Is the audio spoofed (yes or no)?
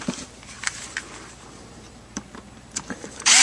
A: yes